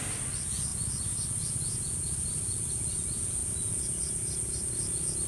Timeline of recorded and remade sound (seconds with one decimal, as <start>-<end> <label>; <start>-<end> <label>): 0.0-5.3 recorded